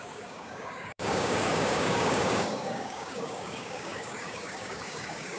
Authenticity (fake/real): fake